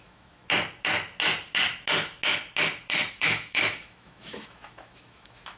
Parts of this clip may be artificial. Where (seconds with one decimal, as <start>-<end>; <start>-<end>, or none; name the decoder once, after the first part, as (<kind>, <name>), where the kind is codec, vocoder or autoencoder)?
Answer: 0.0-0.4 (autoencoder, DAC-VAE); 3.1-5.6